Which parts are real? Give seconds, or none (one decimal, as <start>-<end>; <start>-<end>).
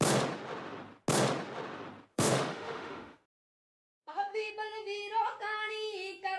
0.0-2.1; 3.3-3.9; 4.5-6.4